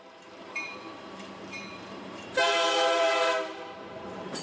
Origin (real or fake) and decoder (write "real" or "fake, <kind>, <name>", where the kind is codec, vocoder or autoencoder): fake, vocoder, BigVGAN v2